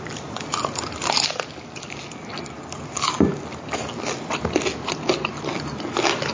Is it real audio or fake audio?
real